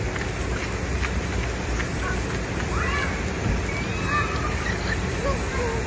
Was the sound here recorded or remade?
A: recorded